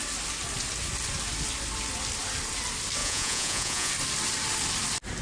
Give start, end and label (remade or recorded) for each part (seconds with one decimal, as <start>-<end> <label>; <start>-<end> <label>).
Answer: 0.0-3.0 recorded; 3.0-3.9 remade; 3.9-5.2 recorded

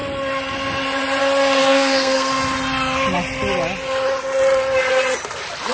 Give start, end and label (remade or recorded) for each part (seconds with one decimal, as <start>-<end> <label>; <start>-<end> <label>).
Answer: 0.0-1.6 recorded; 1.6-2.3 remade; 2.3-5.7 recorded